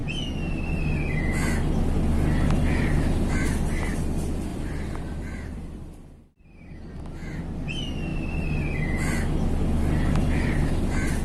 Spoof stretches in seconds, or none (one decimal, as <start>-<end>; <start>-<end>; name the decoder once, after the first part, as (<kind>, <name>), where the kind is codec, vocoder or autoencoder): 4.5-7.0 (vocoder, BigVGAN v2)